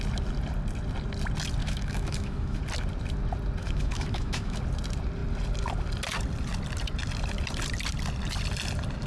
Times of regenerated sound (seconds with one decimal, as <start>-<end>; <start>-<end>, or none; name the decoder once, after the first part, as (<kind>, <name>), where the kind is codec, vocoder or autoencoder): 1.6-2.6 (autoencoder, DAC-VAE); 3.6-4.6